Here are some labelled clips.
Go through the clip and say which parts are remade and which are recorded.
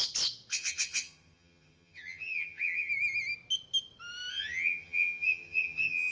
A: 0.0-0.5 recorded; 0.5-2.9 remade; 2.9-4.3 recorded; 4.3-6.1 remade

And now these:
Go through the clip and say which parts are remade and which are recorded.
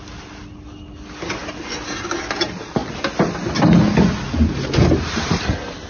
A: 0.0-5.9 recorded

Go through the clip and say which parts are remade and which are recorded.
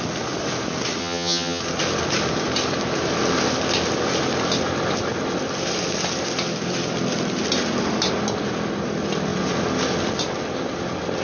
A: 0.0-1.0 recorded; 1.0-1.6 remade; 1.6-11.2 recorded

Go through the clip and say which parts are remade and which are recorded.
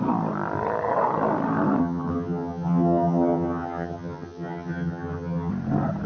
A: 0.0-1.8 recorded; 1.8-5.5 remade; 5.5-6.1 recorded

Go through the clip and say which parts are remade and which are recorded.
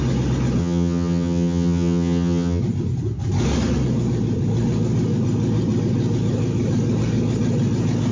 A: 0.0-0.6 recorded; 0.6-2.6 remade; 2.6-8.1 recorded